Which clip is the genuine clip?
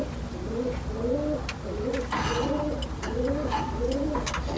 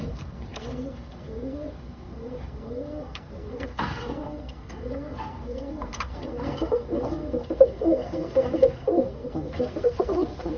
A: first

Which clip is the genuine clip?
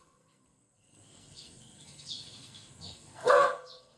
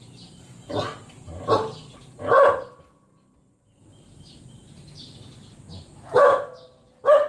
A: second